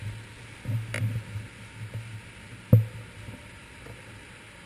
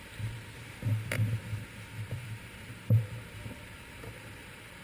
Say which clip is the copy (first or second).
second